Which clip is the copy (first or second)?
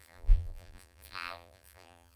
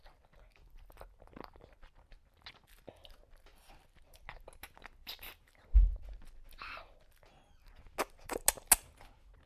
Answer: first